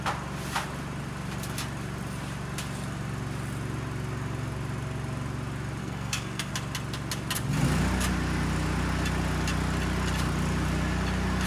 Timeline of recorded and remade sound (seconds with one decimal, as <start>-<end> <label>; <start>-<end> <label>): 0.0-5.8 recorded; 5.8-6.5 remade; 6.5-11.5 recorded